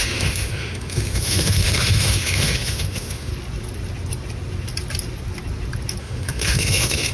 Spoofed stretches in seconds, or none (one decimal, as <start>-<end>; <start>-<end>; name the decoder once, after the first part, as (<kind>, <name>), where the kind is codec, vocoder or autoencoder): 0.0-3.3 (autoencoder, DAC-VAE); 6.0-7.1